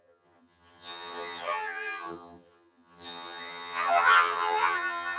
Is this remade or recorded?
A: remade